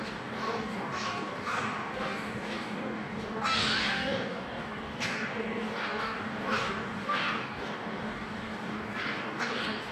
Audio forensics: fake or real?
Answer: fake